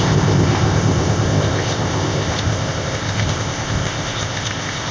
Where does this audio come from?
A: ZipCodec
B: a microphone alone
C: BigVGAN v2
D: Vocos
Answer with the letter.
A